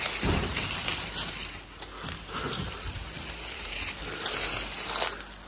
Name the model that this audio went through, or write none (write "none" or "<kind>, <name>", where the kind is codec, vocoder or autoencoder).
none